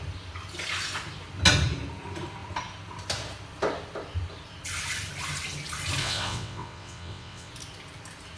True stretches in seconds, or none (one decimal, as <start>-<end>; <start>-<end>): 0.0-6.0; 7.5-8.4